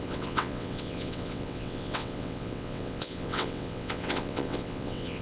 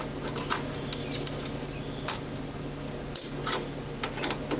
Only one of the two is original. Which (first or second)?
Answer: second